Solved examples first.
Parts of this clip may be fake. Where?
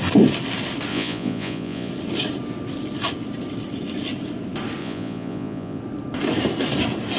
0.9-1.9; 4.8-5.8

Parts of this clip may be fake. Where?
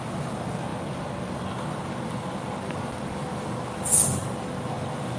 none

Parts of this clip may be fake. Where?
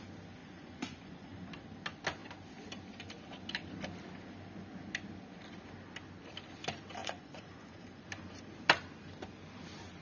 0.4-1.5; 7.0-8.1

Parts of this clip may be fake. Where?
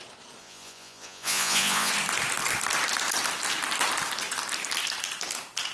0.4-1.9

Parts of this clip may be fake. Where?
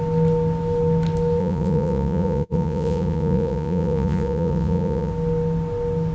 1.4-5.1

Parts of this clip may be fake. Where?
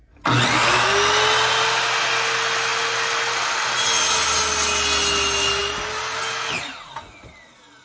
none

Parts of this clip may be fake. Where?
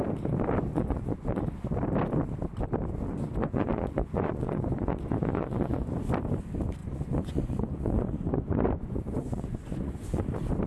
0.7-1.4; 3.4-5.9; 6.8-10.2